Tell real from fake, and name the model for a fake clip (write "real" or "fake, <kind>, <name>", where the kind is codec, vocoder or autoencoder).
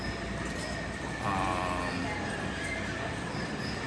real